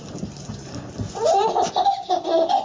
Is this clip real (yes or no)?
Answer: yes